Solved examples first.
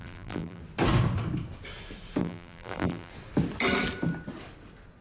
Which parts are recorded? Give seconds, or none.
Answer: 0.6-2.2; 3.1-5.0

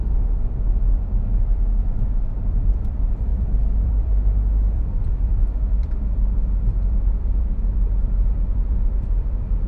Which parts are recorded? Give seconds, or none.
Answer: none